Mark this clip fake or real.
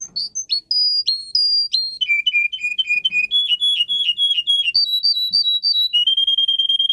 real